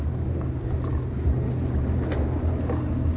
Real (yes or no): yes